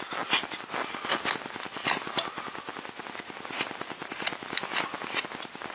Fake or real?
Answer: real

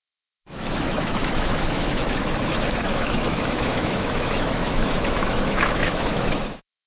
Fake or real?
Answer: fake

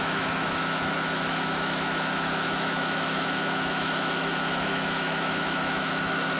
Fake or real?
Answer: fake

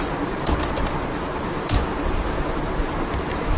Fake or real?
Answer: fake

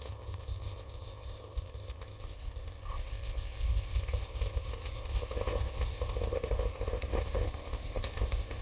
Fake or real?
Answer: fake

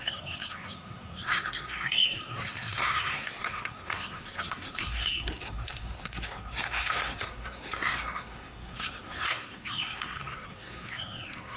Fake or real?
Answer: fake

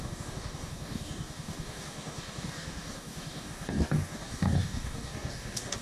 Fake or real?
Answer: fake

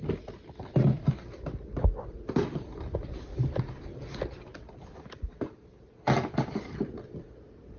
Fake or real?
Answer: real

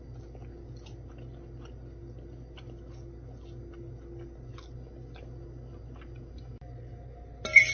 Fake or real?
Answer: real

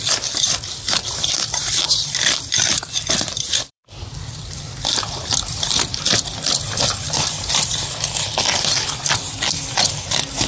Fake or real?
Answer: fake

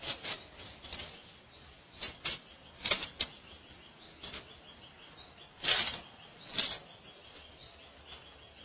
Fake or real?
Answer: real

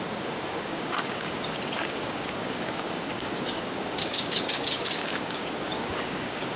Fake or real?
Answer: fake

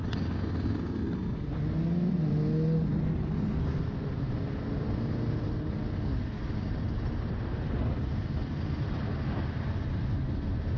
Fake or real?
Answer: real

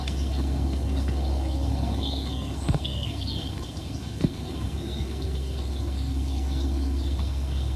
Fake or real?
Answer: fake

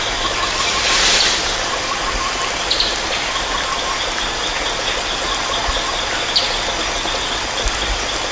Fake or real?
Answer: real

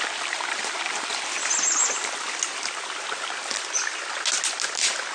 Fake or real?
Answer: real